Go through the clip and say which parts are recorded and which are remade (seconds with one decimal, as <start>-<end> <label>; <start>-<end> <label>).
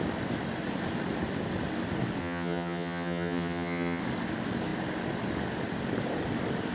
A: 0.0-2.2 recorded; 2.2-4.0 remade; 4.0-6.7 recorded